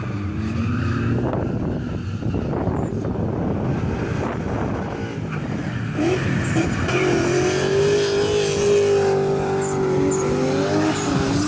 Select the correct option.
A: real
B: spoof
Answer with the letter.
A